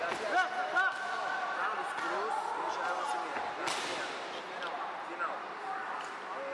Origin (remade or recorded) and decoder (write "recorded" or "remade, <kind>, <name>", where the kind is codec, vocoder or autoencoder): recorded